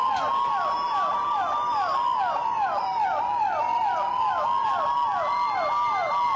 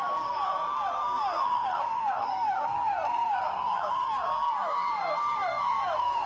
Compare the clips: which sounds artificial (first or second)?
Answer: second